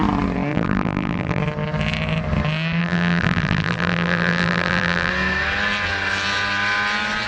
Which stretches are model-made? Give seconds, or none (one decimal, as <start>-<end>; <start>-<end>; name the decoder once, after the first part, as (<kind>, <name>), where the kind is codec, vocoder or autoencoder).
0.5-1.4 (vocoder, BigVGAN v2); 2.8-5.1